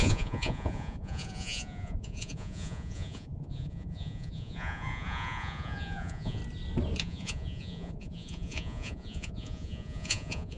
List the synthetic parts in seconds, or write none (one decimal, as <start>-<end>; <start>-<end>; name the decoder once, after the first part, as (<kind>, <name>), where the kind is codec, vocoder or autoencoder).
0.0-6.4 (vocoder, Vocos); 7.0-10.6